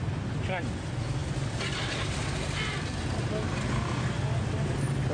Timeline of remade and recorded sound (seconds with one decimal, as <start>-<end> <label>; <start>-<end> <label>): 0.0-5.1 recorded